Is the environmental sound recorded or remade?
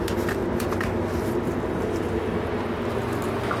recorded